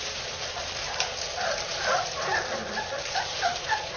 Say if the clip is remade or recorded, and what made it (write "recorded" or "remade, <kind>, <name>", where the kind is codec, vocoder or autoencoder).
recorded